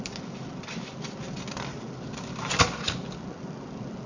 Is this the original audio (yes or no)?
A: yes